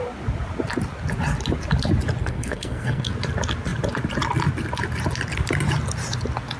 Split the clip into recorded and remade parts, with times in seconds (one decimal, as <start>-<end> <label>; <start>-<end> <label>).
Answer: 0.0-2.2 recorded; 2.2-3.1 remade; 3.1-6.6 recorded